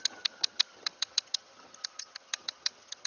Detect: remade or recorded remade